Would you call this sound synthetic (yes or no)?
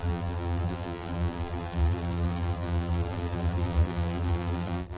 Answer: yes